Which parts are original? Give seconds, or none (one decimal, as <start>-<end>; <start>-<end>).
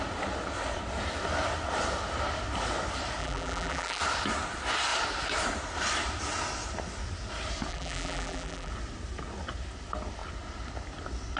0.0-3.2; 4.0-7.7; 8.7-11.4